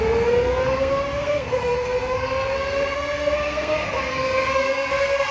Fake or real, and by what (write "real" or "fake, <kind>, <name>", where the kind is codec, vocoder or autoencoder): fake, codec, SNAC